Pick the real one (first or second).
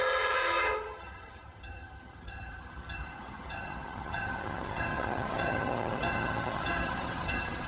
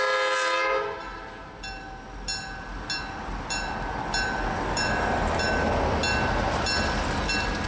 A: second